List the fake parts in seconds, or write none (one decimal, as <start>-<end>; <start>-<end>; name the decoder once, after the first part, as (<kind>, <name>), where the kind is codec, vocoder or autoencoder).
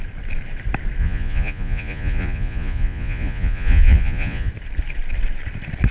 1.0-4.5 (vocoder, Vocos)